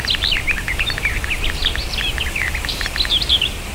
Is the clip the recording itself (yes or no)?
yes